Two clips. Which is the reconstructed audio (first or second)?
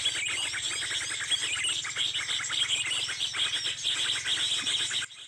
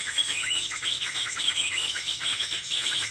second